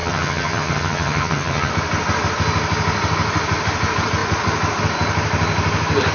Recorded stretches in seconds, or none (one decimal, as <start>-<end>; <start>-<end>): 1.7-6.1